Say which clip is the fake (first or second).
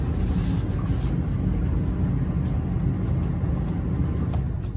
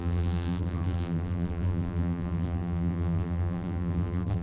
second